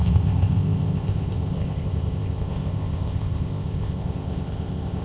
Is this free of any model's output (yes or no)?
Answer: no